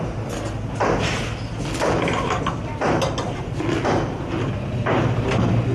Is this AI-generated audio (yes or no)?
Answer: no